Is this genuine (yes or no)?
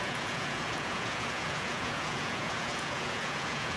no